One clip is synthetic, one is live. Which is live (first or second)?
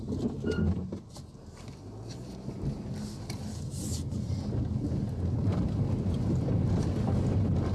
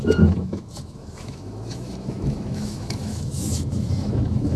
first